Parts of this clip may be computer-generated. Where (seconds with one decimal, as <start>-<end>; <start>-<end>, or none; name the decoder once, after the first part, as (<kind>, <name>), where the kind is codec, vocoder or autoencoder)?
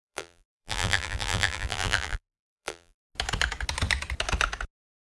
0.0-3.0 (vocoder, BigVGAN v2)